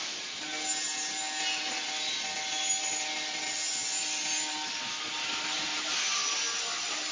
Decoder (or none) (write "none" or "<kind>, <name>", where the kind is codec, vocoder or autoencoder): none